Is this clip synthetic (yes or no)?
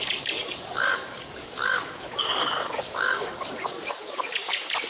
yes